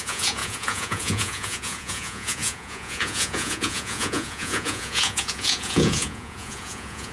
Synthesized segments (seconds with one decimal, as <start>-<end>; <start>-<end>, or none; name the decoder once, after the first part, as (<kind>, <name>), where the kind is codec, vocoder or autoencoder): 0.0-7.1 (vocoder, Vocos)